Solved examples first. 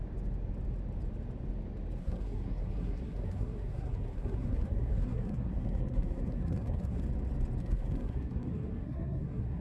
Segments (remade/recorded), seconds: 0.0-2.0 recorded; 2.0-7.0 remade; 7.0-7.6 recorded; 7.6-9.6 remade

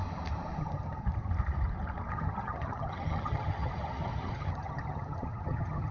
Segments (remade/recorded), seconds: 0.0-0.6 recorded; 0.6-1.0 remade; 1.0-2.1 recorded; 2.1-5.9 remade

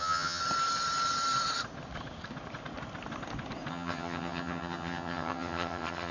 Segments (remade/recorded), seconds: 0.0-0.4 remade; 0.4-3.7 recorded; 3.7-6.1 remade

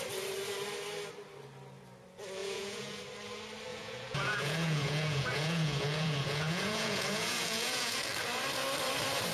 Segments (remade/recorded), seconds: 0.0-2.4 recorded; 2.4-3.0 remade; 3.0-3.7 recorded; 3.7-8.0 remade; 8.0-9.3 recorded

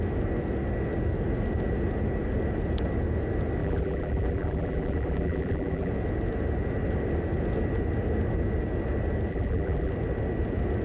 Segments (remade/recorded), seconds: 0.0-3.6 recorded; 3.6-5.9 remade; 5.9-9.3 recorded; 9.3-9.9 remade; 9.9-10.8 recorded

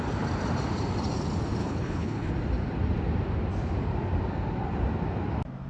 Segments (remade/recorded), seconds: 0.0-1.6 recorded; 1.6-2.3 remade; 2.3-5.7 recorded

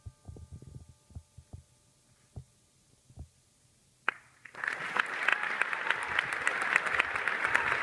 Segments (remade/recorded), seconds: 0.0-7.8 recorded